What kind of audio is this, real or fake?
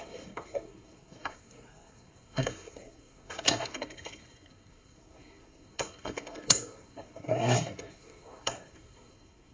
fake